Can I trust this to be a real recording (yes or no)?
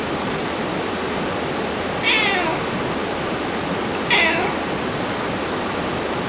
yes